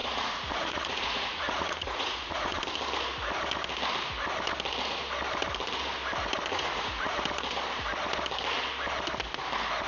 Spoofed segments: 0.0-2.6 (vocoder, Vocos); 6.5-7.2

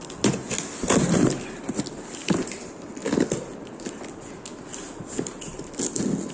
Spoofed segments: none

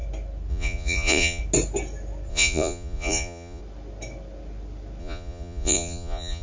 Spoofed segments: 0.5-1.4 (vocoder, Vocos); 2.3-3.6; 5.0-6.4

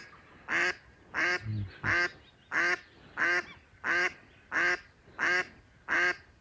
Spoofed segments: none